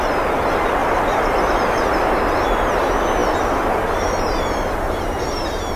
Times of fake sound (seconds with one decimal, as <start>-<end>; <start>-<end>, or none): 0.0-5.8